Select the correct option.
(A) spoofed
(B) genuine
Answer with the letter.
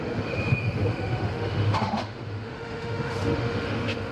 A